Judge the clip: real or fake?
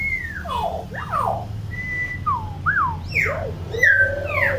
real